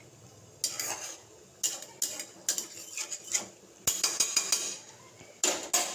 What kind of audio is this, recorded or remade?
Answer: recorded